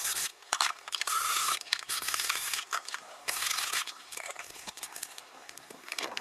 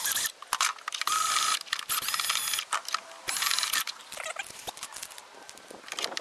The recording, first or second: second